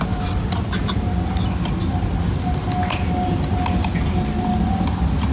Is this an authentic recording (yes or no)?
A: yes